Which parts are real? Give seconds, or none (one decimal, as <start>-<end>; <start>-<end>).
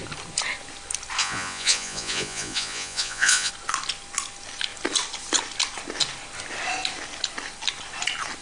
0.0-1.2; 3.5-8.4